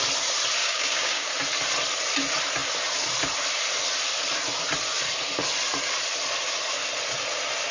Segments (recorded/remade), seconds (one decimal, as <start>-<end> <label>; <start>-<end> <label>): 0.0-0.6 recorded; 0.6-1.3 remade; 1.3-7.7 recorded